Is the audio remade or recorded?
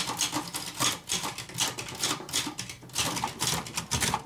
recorded